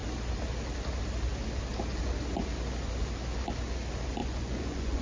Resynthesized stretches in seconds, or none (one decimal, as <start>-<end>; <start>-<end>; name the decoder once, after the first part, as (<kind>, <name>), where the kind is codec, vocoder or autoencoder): 4.2-5.0 (vocoder, Vocos)